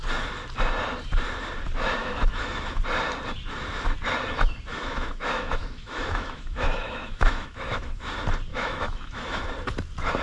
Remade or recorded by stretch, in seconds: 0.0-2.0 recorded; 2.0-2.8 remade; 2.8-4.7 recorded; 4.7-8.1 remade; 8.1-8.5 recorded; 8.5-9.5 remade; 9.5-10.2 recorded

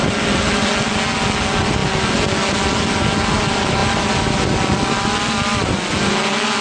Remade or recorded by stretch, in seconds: 0.0-6.6 recorded

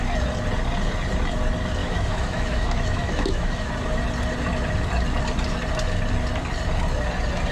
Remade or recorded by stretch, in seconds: 0.0-1.8 recorded; 1.8-3.7 remade; 3.7-7.5 recorded

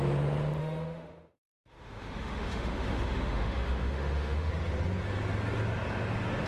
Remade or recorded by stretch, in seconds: 0.0-0.6 recorded; 0.6-4.5 remade; 4.5-6.5 recorded